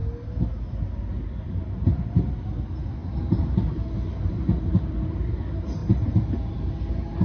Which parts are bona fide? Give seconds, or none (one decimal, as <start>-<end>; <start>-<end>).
0.0-7.2